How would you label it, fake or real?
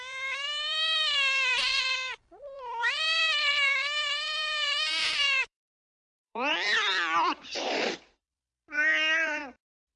fake